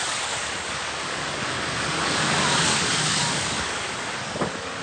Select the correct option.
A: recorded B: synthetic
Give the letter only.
B